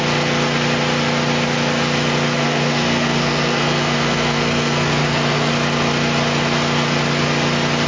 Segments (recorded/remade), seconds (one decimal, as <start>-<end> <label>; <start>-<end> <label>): 0.0-2.4 recorded; 2.4-5.5 remade; 5.5-7.9 recorded